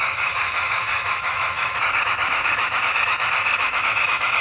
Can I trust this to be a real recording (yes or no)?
no